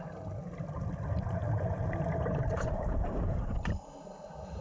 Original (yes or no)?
yes